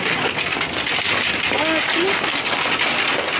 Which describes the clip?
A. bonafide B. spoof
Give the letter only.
A